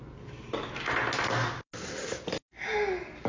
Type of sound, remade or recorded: recorded